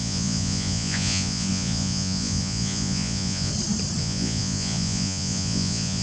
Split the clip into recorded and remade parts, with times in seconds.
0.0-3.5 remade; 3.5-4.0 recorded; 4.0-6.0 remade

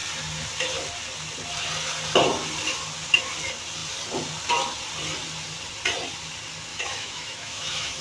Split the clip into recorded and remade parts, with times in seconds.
0.0-6.7 recorded; 6.7-8.0 remade

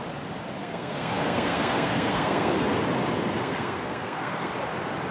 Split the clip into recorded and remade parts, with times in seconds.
0.0-0.6 recorded; 0.6-2.5 remade; 2.5-3.3 recorded; 3.3-4.5 remade; 4.5-5.1 recorded

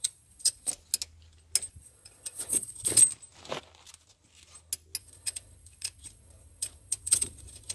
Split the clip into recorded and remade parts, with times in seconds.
0.0-0.7 remade; 0.7-1.7 recorded; 1.7-3.0 remade; 3.0-5.0 recorded; 5.0-7.7 remade